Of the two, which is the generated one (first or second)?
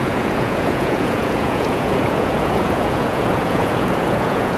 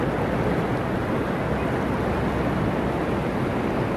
first